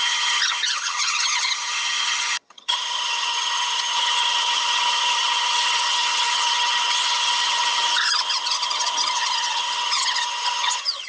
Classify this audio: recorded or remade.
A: remade